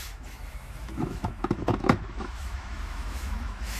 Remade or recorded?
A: remade